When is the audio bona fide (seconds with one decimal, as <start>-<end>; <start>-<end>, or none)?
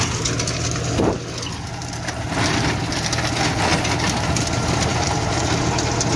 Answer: 0.0-1.8; 2.3-4.9; 5.4-6.2